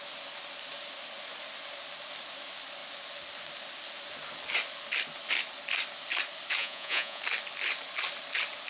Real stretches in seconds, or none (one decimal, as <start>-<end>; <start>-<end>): 0.0-6.6; 7.2-8.7